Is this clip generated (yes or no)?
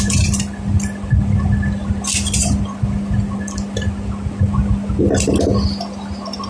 no